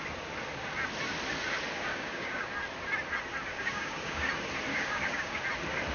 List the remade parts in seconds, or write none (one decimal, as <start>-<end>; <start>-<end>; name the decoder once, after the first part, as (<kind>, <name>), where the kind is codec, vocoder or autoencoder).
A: 1.9-2.5 (codec, DAC); 3.5-4.3; 4.7-5.4

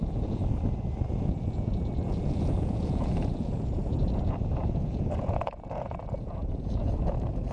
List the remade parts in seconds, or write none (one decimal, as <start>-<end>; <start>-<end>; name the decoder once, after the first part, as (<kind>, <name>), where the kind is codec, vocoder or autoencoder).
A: 0.0-0.4 (vocoder, Vocos); 1.1-7.5